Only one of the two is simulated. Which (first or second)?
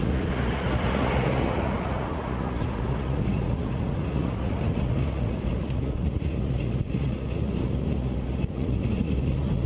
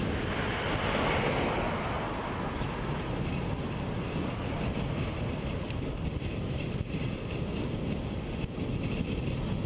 first